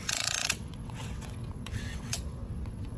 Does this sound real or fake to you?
fake